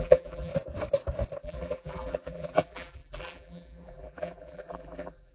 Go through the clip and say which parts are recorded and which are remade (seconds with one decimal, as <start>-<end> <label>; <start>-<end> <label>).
0.0-0.5 remade; 0.5-1.4 recorded; 1.4-5.3 remade